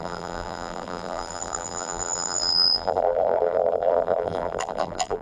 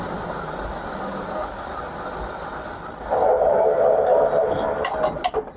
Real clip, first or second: second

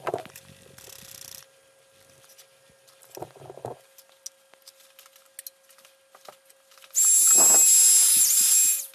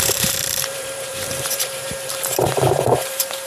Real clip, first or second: first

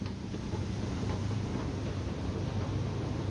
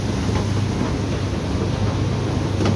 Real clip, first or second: second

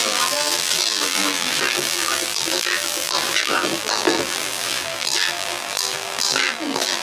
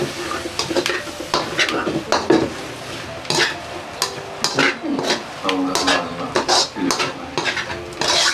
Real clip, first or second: second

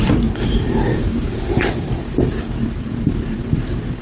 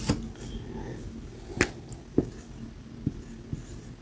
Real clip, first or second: second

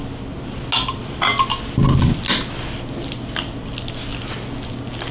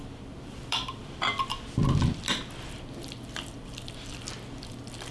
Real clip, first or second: first